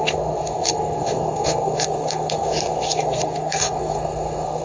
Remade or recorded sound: remade